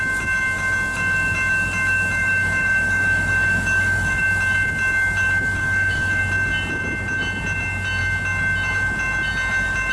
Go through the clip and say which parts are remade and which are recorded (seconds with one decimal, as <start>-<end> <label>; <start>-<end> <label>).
0.0-2.2 recorded; 2.2-4.2 remade; 4.2-5.6 recorded; 5.6-6.2 remade; 6.2-9.9 recorded